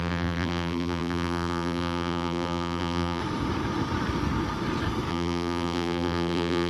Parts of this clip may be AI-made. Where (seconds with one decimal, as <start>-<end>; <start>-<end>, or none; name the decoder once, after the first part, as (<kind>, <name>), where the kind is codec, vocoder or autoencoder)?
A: 0.0-3.2 (vocoder, BigVGAN v2); 5.1-6.7